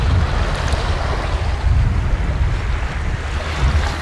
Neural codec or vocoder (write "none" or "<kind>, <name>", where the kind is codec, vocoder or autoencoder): none